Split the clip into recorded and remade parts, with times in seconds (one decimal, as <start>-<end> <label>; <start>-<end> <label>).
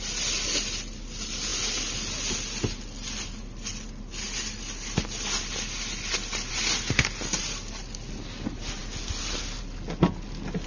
0.0-10.7 recorded